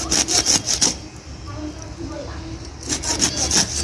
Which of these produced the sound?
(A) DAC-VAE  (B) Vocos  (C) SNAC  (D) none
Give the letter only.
D